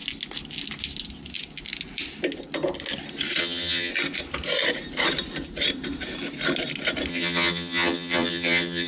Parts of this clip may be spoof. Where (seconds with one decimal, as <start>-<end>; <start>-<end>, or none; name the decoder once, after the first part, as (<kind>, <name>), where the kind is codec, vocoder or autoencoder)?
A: 3.4-3.9 (vocoder, HiFi-GAN); 7.1-8.9